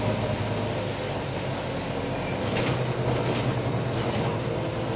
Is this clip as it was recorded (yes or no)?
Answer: yes